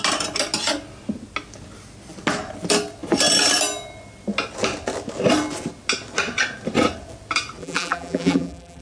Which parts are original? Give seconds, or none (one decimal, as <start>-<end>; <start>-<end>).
0.0-7.6